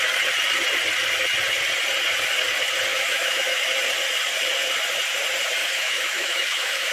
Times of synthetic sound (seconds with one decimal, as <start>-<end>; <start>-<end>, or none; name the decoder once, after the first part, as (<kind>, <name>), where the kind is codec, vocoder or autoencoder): 2.9-3.7 (autoencoder, DAC-VAE); 5.6-6.9